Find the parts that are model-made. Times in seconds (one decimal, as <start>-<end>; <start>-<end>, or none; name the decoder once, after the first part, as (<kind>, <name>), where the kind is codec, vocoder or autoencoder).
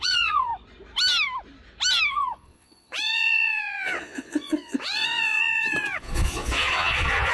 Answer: 0.0-0.5 (vocoder, Vocos); 2.1-7.3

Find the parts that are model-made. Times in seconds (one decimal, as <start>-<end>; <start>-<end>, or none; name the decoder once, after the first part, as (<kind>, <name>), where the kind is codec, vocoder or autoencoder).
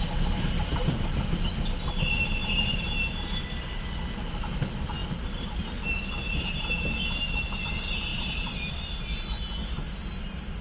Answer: 0.7-1.5 (vocoder, BigVGAN v2); 2.4-2.9; 8.1-8.8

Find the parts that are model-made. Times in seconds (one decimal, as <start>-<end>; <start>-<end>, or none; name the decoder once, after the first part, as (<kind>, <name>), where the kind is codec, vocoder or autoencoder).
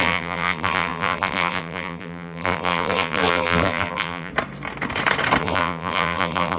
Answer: 0.0-4.3 (vocoder, BigVGAN v2); 5.4-6.6